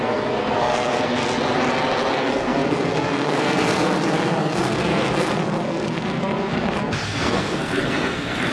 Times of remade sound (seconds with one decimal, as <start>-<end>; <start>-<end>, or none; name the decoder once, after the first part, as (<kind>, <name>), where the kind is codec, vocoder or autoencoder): 0.0-1.2 (codec, SNAC); 2.1-8.5